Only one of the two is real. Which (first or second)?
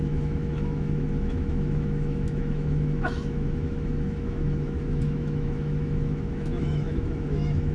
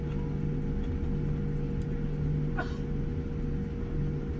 second